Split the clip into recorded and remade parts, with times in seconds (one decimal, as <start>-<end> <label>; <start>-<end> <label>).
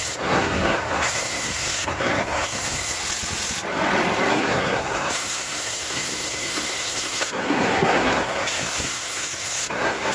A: 0.0-3.0 remade; 3.0-4.3 recorded; 4.3-10.1 remade